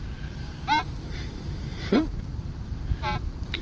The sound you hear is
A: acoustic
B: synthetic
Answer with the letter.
B